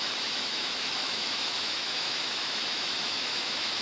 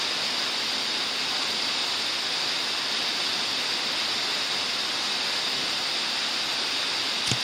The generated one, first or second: first